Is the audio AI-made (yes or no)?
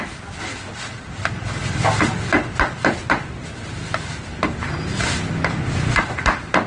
no